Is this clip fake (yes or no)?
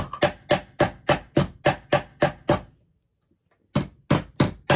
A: no